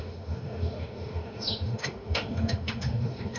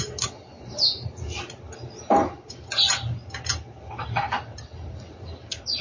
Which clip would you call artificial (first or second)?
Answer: first